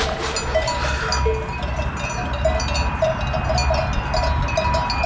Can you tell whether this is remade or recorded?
recorded